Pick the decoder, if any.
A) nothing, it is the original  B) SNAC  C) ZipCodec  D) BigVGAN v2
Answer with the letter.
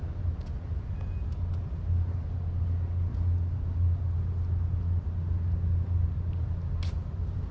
A